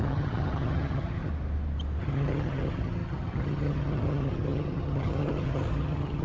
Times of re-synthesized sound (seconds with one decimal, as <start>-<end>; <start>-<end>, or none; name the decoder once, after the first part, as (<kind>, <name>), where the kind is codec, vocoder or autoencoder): 0.0-1.3 (vocoder, HiFi-GAN); 2.0-6.2

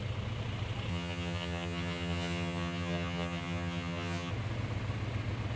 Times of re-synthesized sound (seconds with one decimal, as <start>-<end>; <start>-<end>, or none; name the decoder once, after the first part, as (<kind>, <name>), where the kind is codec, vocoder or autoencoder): 0.9-4.3 (vocoder, HiFi-GAN)

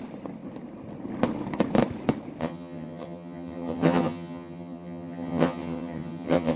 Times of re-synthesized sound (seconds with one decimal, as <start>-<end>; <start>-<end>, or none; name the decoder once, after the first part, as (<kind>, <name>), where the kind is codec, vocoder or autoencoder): 2.4-6.6 (vocoder, HiFi-GAN)

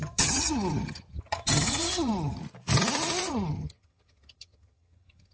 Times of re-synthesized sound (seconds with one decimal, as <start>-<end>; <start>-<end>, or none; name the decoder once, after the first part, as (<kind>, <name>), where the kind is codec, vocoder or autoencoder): 0.0-2.4 (vocoder, HiFi-GAN); 3.3-5.3

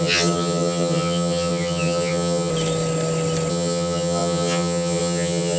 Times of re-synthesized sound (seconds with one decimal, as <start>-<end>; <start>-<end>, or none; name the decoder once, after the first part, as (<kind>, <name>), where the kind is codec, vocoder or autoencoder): 0.0-2.5 (vocoder, HiFi-GAN); 3.5-5.6

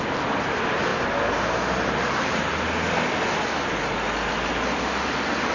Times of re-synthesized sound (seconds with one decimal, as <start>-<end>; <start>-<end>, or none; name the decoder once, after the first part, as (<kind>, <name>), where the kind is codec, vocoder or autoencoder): none

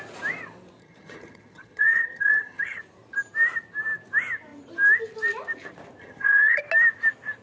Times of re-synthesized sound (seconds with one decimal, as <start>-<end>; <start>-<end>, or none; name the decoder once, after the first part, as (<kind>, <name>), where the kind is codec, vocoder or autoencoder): 0.8-2.8 (vocoder, HiFi-GAN); 6.0-6.6